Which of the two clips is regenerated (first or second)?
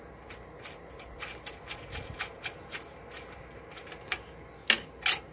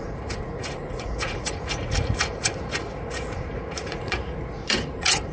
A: second